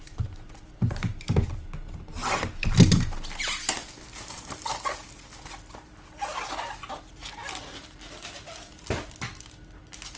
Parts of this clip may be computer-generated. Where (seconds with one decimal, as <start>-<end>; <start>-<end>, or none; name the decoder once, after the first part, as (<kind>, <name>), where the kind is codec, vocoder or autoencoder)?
none

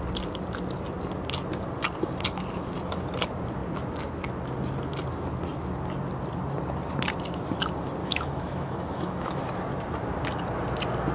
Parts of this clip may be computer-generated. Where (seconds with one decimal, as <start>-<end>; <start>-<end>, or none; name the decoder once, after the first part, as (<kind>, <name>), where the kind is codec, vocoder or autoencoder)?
8.0-9.4 (autoencoder, DAC-VAE)

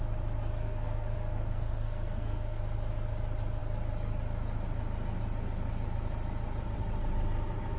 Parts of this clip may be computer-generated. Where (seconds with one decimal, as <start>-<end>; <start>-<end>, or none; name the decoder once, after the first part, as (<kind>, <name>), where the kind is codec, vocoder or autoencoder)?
0.6-2.6 (codec, SNAC)

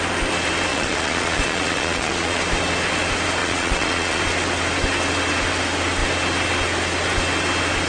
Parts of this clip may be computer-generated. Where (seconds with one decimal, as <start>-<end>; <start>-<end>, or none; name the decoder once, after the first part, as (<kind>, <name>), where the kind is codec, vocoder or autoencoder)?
0.7-2.4 (vocoder, Vocos); 3.4-4.2